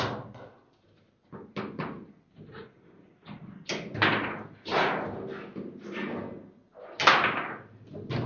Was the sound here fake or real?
real